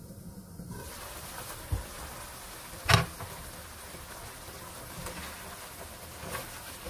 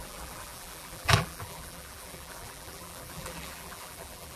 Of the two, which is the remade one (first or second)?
second